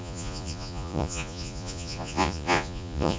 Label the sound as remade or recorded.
remade